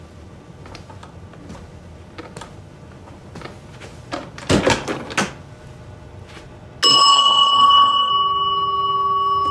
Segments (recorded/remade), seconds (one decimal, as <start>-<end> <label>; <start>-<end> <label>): 0.0-6.9 recorded; 6.9-8.1 remade; 8.1-9.5 recorded

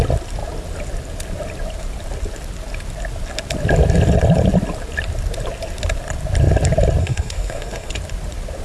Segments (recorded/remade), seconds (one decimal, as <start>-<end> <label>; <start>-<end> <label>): 0.0-7.0 recorded; 7.0-7.9 remade; 7.9-8.6 recorded

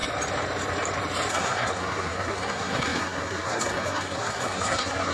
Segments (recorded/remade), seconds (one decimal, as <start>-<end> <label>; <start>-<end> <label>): 0.0-1.3 recorded; 1.3-5.1 remade